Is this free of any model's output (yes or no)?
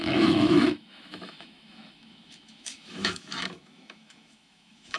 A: no